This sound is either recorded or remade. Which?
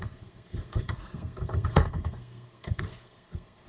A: remade